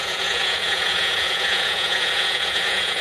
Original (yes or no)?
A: no